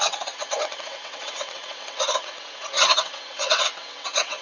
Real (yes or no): no